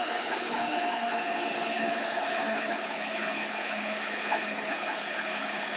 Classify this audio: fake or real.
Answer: fake